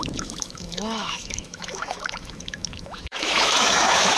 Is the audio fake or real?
fake